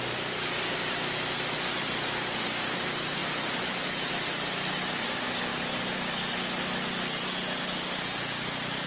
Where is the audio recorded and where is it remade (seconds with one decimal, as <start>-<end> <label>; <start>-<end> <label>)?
0.0-8.9 recorded